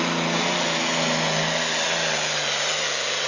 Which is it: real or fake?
real